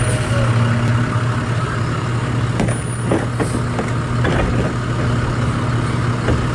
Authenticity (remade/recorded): recorded